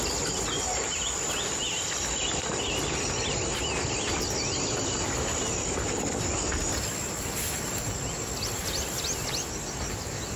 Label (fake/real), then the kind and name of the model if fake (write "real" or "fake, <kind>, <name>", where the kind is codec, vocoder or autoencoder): real